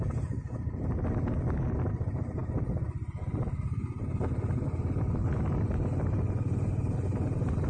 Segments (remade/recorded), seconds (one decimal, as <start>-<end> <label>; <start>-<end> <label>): 0.0-7.7 recorded